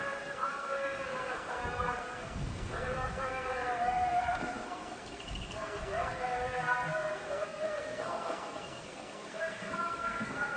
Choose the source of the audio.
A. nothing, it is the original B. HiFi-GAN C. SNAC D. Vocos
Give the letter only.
C